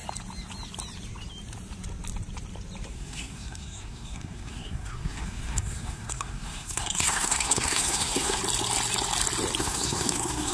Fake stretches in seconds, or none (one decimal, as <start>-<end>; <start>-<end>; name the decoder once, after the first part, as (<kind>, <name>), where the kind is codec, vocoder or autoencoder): 2.9-8.4 (codec, SNAC); 9.6-10.5